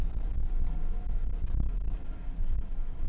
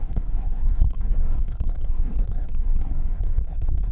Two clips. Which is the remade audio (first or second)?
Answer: second